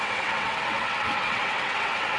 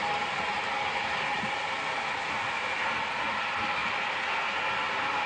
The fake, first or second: first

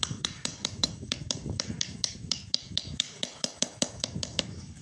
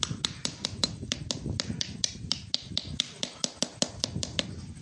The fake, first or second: first